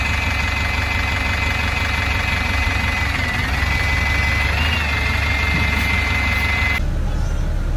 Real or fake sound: real